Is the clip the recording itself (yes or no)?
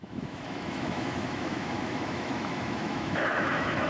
no